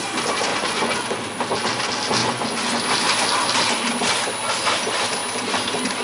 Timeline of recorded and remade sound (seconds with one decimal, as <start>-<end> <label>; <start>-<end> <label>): 0.0-0.5 recorded; 0.5-1.3 remade; 1.3-2.2 recorded; 2.2-2.8 remade; 2.8-6.0 recorded